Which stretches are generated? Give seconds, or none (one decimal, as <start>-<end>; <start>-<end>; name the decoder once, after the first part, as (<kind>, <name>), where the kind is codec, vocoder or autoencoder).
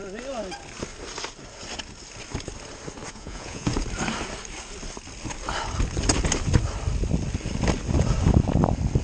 3.1-3.7 (vocoder, Vocos)